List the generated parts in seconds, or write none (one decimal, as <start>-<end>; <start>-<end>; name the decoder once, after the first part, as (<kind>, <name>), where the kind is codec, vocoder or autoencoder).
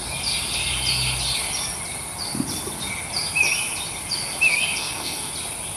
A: 4.5-5.3 (codec, SNAC)